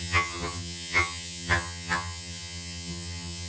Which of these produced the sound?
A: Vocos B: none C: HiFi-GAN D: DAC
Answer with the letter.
C